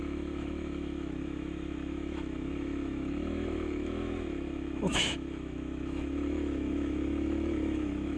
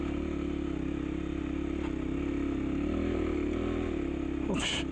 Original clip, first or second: second